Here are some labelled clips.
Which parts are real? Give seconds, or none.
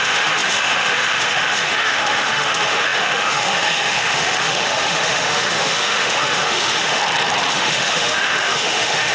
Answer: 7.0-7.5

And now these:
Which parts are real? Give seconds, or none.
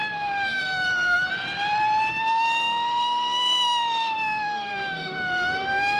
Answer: 1.3-2.1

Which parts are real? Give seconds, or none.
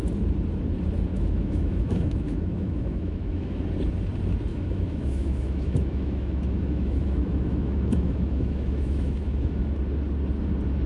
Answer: 0.0-1.1; 3.6-4.5; 9.8-10.9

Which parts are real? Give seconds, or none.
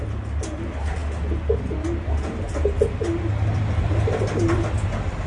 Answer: 0.0-5.3